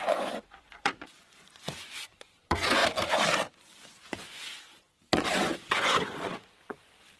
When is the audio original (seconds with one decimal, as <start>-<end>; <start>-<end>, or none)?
2.8-3.6